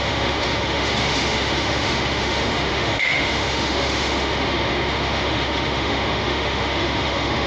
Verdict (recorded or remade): remade